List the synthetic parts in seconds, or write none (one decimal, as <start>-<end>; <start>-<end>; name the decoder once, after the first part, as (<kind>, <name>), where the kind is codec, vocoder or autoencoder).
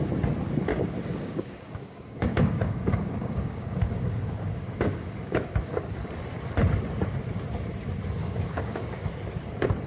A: 0.7-5.9 (codec, DAC); 8.2-9.1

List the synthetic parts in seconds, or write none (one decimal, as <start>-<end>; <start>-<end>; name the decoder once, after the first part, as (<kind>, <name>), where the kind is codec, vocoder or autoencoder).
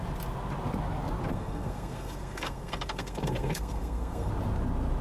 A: 1.3-4.3 (codec, SNAC)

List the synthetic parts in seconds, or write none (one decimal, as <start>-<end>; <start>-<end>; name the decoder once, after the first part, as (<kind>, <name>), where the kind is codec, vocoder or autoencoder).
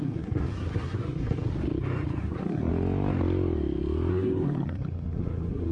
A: 0.0-1.5 (codec, SNAC); 2.2-2.7; 4.1-5.7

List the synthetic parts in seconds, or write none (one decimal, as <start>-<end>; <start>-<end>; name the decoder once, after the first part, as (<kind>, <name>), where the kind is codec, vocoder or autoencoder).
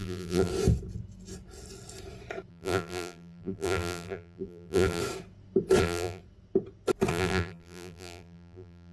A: 0.0-0.5 (vocoder, BigVGAN v2); 2.5-5.0; 5.8-6.2; 7.1-8.9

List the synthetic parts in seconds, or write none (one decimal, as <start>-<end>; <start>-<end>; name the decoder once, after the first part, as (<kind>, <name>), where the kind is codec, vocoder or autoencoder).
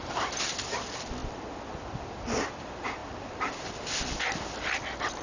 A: 0.0-1.2 (vocoder, BigVGAN v2); 2.5-5.2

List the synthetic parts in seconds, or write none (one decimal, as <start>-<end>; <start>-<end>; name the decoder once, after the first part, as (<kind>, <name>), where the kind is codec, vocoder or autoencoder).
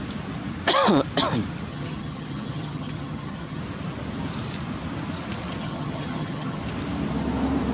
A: 1.7-3.6 (vocoder, HiFi-GAN); 5.6-6.6